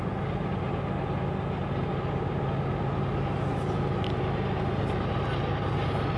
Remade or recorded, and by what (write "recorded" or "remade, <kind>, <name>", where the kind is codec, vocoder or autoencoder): recorded